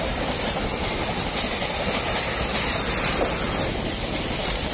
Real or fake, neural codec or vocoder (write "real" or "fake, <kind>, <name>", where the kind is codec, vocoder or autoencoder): real